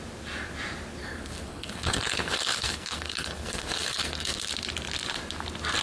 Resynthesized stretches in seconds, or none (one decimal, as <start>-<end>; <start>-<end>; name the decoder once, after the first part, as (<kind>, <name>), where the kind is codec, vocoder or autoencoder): 1.0-4.5 (codec, SNAC)